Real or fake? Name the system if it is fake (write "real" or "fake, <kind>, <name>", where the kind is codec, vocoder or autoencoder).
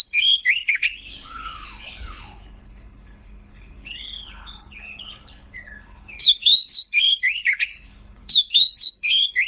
fake, codec, HILCodec